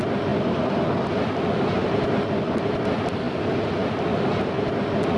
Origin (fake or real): real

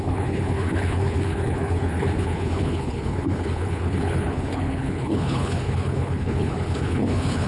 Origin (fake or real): fake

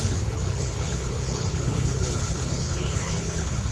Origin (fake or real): fake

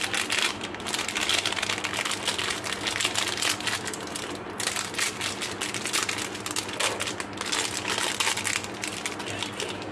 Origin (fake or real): real